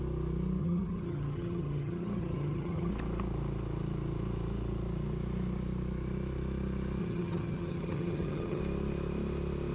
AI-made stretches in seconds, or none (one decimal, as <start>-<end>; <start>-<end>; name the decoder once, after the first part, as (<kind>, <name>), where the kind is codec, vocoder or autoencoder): 0.6-2.9 (vocoder, HiFi-GAN); 7.0-8.6